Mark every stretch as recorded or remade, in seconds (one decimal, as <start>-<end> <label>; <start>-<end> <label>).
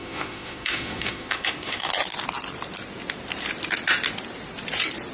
0.0-1.9 remade; 1.9-5.1 recorded